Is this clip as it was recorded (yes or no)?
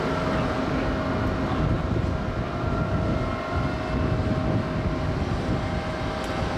yes